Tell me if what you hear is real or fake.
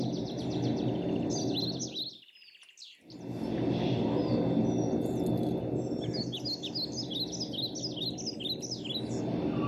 real